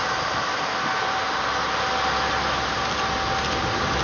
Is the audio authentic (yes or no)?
yes